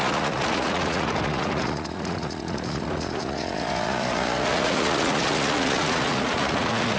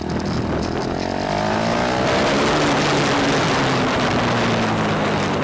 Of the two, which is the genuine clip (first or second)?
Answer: second